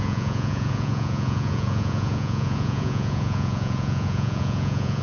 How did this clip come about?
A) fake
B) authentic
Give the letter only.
A